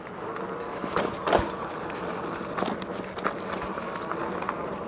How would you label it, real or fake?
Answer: real